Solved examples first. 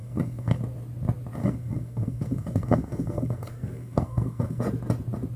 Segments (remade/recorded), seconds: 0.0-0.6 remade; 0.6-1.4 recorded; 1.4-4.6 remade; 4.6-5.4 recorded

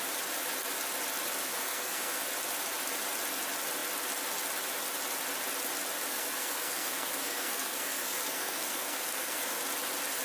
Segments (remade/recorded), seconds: 0.0-1.5 recorded; 1.5-2.2 remade; 2.2-6.1 recorded; 6.1-9.6 remade; 9.6-10.2 recorded